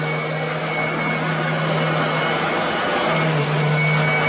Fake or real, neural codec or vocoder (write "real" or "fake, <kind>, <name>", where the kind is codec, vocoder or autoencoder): real